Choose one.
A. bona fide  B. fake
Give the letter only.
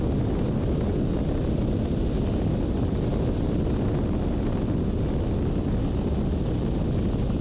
A